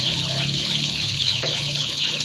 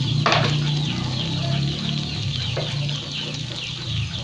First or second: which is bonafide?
second